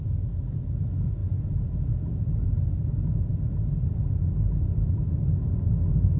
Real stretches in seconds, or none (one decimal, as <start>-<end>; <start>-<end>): 0.0-6.2